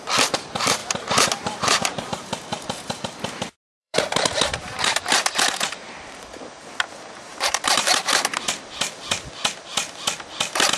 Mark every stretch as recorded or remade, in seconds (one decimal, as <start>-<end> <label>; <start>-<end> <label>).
0.0-0.8 recorded; 0.8-3.0 remade; 3.0-3.8 recorded; 3.8-5.3 remade; 5.3-7.3 recorded; 7.3-8.0 remade; 8.0-10.8 recorded